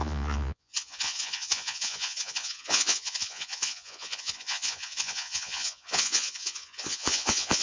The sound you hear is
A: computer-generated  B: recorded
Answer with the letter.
A